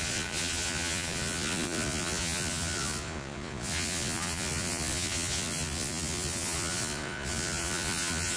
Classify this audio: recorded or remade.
remade